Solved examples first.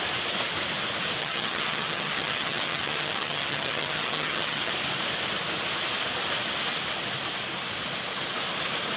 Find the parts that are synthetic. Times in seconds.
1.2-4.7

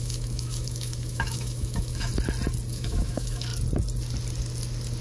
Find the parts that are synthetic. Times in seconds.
0.0-2.1; 2.7-3.5

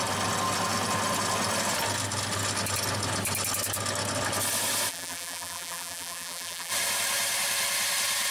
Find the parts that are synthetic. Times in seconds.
4.9-6.7

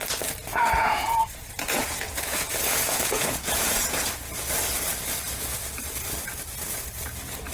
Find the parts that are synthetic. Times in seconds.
0.5-4.1